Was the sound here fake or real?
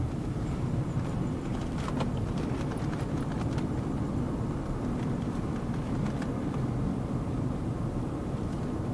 fake